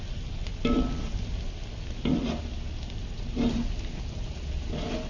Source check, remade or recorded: recorded